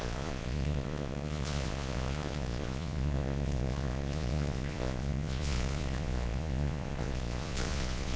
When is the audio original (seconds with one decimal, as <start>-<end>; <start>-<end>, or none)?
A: none